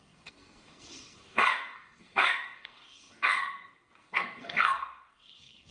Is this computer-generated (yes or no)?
yes